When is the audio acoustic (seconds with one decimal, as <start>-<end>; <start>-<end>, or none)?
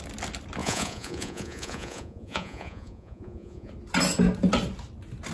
0.0-0.6; 3.7-5.3